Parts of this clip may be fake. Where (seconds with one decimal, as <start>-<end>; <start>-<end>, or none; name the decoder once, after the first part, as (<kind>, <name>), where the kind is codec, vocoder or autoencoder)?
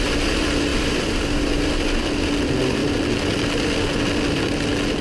none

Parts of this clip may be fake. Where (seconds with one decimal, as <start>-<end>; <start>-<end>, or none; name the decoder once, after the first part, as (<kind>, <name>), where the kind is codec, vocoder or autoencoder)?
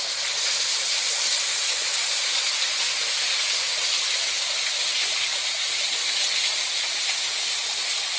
5.3-6.1 (vocoder, BigVGAN v2)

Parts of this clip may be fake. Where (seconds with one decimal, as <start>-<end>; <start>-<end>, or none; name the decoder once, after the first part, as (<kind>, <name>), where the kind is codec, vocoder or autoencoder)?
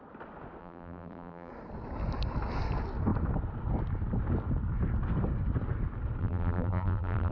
0.6-1.5 (vocoder, BigVGAN v2); 6.2-7.3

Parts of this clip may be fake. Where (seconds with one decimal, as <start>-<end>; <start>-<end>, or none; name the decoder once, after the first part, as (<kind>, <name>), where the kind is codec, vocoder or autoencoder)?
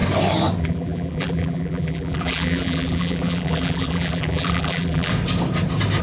0.6-5.1 (vocoder, BigVGAN v2)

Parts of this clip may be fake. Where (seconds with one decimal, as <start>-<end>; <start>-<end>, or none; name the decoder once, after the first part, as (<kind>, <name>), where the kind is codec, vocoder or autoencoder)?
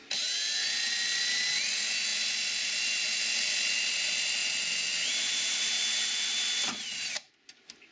4.4-7.3 (vocoder, BigVGAN v2)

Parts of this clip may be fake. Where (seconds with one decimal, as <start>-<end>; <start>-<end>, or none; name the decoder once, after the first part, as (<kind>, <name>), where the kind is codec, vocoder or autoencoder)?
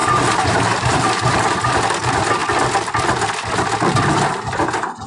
0.0-1.8 (vocoder, BigVGAN v2)